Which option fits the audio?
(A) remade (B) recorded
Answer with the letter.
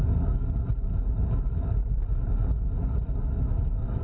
B